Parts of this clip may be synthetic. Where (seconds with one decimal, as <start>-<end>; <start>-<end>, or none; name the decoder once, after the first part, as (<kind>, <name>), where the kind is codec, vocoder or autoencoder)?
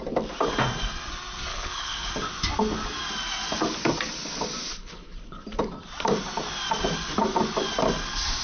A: 1.5-2.1 (codec, HILCodec); 4.8-5.4